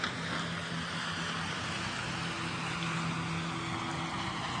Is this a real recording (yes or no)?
yes